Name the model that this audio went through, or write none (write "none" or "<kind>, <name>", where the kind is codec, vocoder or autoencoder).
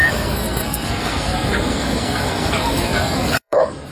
codec, SNAC